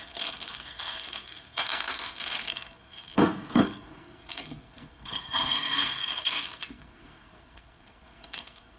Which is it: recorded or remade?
remade